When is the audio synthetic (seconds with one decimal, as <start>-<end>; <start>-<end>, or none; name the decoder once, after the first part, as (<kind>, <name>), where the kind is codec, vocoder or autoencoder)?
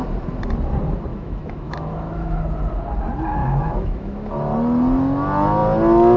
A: 1.1-2.4 (autoencoder, DAC-VAE); 3.4-4.3